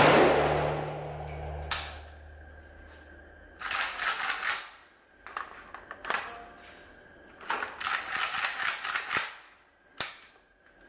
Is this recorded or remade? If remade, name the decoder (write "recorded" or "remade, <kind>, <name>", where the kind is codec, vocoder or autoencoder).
recorded